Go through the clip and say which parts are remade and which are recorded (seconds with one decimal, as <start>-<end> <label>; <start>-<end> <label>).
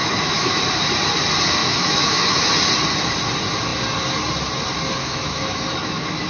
0.0-0.6 remade; 0.6-1.6 recorded; 1.6-2.4 remade; 2.4-5.0 recorded; 5.0-6.3 remade